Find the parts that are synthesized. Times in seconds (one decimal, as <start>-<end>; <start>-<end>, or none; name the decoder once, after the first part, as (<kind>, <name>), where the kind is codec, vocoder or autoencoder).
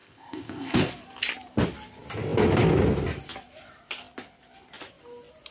0.0-0.9 (codec, ZipCodec)